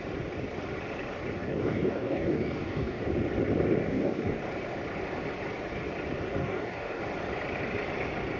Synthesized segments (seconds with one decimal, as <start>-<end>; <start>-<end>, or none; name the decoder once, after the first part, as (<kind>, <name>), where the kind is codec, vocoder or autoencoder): 1.4-3.1 (codec, DAC); 3.8-4.4; 6.4-7.0

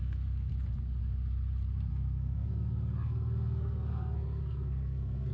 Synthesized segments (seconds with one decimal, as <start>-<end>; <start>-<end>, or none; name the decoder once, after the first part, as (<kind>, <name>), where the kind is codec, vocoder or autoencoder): 0.0-0.5 (codec, SNAC); 1.9-5.3

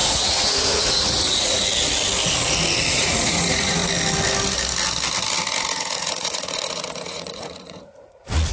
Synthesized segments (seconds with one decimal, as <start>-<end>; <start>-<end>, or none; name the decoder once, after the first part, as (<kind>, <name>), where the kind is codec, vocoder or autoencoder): 0.0-1.6 (vocoder, Vocos); 2.9-3.8; 5.7-8.5

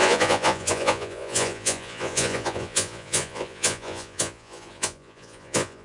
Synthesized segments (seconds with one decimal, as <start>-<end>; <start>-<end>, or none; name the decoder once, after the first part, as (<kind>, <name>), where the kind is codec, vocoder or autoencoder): 0.0-5.8 (vocoder, Vocos)